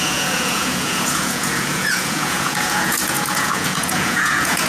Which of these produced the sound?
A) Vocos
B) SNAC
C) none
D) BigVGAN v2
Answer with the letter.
A